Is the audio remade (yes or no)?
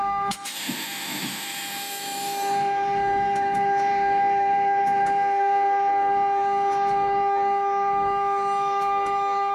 yes